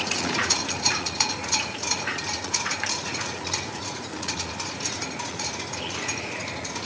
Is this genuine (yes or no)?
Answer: no